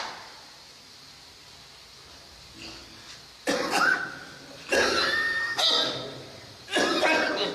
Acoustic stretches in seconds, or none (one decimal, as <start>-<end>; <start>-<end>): 0.0-7.5

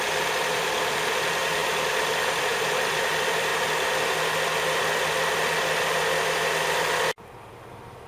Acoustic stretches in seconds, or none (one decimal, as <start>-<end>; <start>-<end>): 3.5-8.1

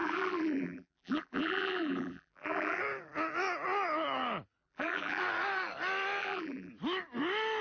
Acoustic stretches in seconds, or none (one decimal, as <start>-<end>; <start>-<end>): 2.8-4.6; 5.2-6.2; 6.7-7.6